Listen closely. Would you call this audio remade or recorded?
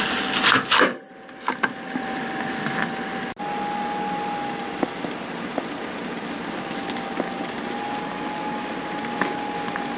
recorded